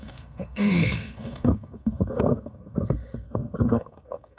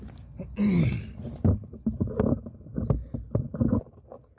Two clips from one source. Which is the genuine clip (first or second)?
second